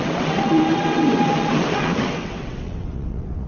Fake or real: fake